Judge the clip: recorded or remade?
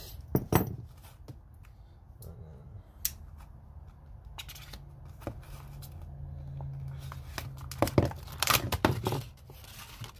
recorded